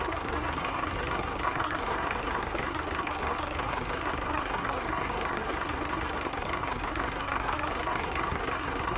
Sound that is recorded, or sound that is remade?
remade